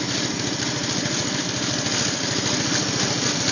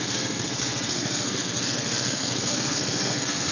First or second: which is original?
first